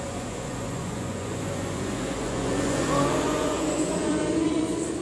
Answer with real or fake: fake